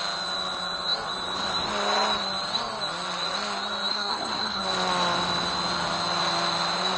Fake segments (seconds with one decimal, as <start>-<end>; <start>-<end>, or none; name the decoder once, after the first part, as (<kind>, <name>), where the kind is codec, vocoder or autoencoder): 3.9-4.6 (codec, SNAC)